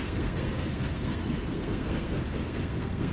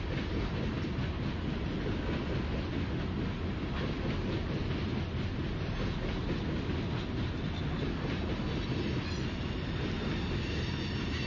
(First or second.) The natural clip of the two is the second